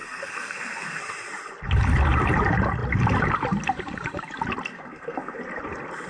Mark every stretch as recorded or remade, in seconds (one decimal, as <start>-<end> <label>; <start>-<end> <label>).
0.0-1.0 remade; 1.0-4.7 recorded; 4.7-5.4 remade; 5.4-6.1 recorded